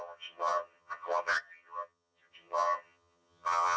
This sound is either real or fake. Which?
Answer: fake